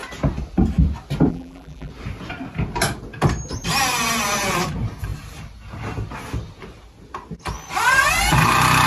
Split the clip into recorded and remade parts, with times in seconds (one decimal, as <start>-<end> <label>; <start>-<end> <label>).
0.0-1.3 recorded; 1.3-1.9 remade; 1.9-8.9 recorded